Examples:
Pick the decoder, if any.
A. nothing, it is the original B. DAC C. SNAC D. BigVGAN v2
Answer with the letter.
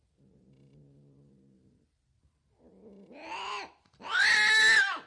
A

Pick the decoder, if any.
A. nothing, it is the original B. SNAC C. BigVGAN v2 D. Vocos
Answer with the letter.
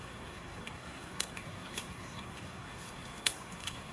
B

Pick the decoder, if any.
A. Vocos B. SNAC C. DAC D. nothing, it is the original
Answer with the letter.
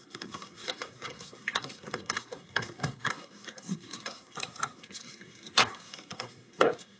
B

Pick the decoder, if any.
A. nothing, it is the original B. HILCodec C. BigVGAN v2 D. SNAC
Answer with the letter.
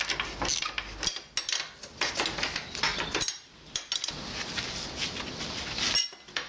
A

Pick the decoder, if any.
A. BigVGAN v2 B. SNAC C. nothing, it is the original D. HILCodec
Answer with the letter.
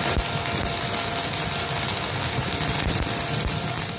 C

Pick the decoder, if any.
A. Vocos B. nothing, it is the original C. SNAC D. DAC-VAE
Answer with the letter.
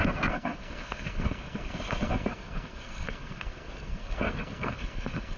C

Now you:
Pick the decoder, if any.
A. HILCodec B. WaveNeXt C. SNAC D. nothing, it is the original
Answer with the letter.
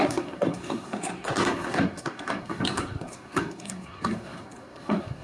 C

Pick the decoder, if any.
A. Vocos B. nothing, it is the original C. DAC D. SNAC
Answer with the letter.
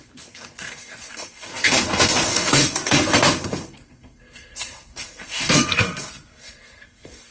D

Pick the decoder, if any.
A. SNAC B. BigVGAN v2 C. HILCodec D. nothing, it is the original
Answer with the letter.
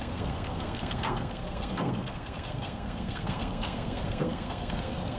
A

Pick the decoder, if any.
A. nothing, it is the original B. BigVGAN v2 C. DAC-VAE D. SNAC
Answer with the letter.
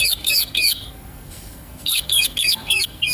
D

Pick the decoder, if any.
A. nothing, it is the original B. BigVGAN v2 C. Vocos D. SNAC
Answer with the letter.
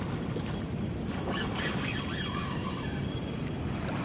A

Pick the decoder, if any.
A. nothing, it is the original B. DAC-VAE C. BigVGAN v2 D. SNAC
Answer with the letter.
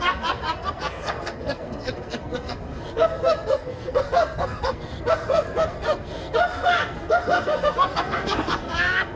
D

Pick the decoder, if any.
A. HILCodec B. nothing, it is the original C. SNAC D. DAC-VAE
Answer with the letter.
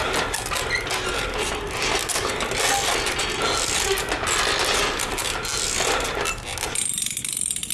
B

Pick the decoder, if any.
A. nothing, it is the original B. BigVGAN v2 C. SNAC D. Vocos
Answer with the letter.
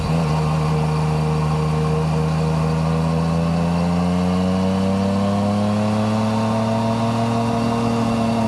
A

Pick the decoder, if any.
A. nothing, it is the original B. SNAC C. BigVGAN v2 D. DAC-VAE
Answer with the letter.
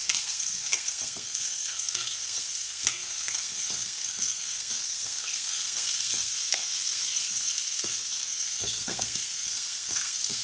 B